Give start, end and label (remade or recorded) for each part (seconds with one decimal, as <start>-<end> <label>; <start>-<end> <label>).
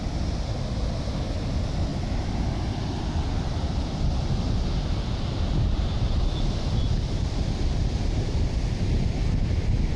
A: 0.0-10.0 recorded